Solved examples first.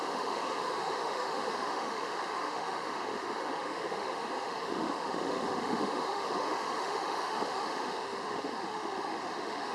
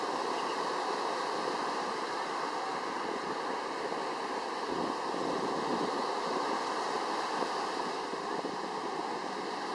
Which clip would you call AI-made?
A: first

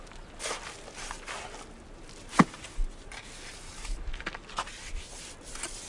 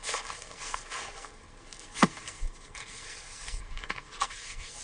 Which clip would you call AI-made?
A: second